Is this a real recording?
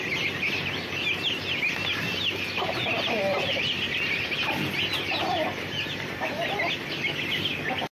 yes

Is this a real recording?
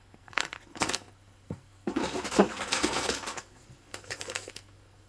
no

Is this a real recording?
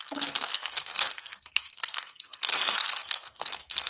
no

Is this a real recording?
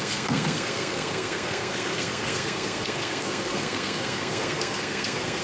no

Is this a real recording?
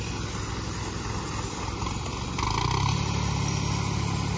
yes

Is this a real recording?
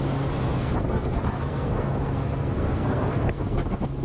no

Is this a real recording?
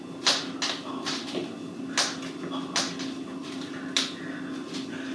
yes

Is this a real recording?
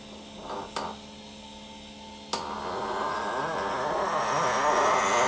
yes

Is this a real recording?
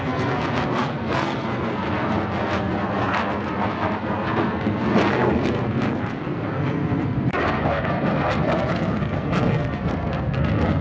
no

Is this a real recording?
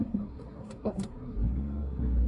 no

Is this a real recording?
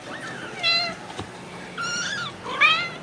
yes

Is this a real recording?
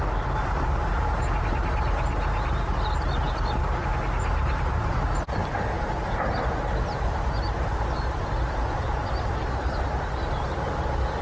yes